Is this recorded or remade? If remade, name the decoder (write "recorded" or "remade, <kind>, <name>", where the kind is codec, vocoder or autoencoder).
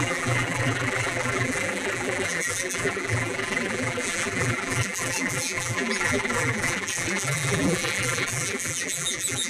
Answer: remade, vocoder, BigVGAN v2